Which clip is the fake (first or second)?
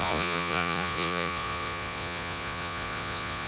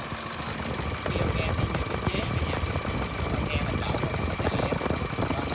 first